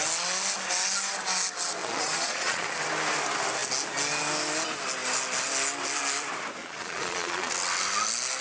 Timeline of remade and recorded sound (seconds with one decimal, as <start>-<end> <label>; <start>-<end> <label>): 0.0-1.8 recorded; 1.8-2.7 remade; 2.7-6.6 recorded; 6.6-7.5 remade; 7.5-8.4 recorded